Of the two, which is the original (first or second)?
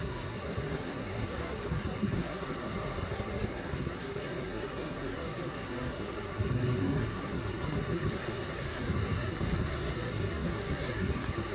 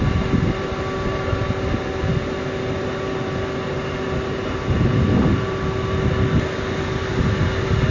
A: second